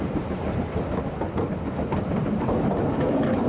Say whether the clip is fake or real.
real